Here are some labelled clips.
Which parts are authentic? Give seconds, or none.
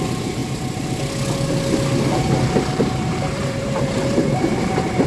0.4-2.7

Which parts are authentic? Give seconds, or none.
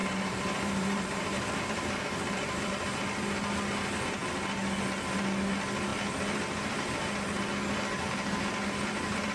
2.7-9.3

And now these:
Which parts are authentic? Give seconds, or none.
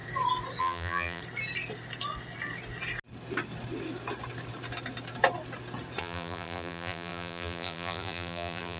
0.0-0.6; 1.2-6.0